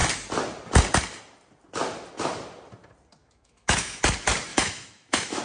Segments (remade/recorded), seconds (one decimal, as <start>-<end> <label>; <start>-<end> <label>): 0.0-3.2 recorded; 3.2-4.0 remade; 4.0-4.5 recorded; 4.5-5.4 remade